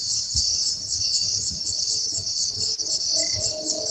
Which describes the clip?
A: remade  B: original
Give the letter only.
B